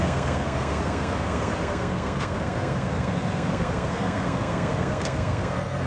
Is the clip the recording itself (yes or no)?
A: no